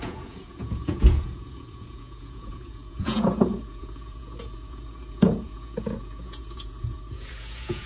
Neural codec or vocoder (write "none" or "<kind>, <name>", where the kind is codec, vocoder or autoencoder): vocoder, Vocos